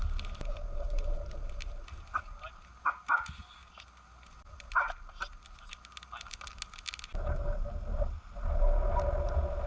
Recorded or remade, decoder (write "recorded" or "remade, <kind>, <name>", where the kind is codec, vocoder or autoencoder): recorded